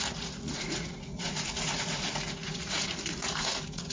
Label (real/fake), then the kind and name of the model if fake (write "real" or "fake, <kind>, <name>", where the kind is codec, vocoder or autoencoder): fake, vocoder, Vocos